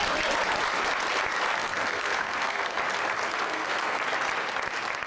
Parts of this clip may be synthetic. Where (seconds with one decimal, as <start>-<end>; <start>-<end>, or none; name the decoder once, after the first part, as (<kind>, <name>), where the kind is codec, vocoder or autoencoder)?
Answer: 1.6-2.8 (codec, SNAC); 3.4-4.0

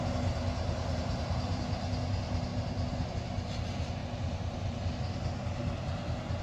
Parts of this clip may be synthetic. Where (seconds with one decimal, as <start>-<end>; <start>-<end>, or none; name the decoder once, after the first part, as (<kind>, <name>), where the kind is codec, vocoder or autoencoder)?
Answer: none

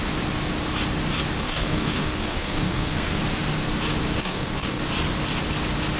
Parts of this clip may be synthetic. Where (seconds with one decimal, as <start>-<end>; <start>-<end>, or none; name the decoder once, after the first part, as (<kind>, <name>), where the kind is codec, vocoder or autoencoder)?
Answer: 1.4-3.2 (codec, SNAC); 4.2-4.8

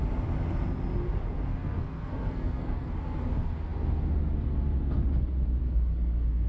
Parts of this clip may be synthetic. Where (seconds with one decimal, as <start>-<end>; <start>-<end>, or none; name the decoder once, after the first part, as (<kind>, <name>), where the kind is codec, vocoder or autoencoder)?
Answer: 1.5-2.9 (codec, SNAC); 5.6-6.5

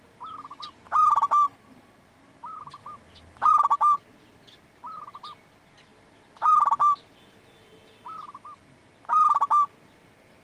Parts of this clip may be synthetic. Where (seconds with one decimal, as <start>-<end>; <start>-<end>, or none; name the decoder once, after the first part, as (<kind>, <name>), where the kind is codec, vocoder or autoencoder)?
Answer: 5.9-6.8 (vocoder, BigVGAN v2)

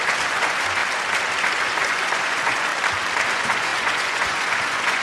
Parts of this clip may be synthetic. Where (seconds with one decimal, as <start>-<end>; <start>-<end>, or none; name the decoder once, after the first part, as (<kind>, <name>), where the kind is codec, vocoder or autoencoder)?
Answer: 0.0-0.8 (vocoder, Vocos); 1.4-2.7; 3.3-5.0

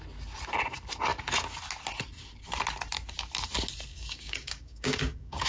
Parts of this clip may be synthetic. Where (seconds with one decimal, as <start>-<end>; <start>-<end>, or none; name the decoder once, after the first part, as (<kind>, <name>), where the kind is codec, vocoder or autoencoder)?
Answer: 3.9-5.5 (codec, DAC)